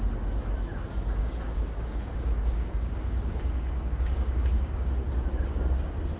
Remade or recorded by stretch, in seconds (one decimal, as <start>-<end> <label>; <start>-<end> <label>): 0.0-1.2 recorded; 1.2-4.9 remade; 4.9-6.2 recorded